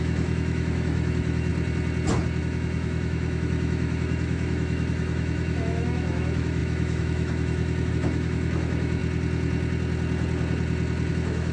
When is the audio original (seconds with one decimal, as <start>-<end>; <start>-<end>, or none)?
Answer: 1.5-2.4; 9.0-11.1